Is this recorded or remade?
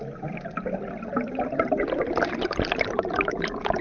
recorded